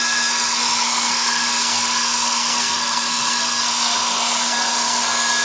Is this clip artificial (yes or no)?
yes